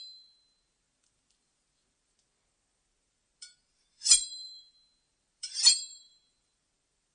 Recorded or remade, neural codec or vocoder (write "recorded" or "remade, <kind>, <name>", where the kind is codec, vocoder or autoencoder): remade, vocoder, BigVGAN v2